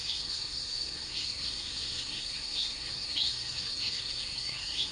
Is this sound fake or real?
fake